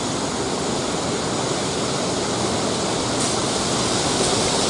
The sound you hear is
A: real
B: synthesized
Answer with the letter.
A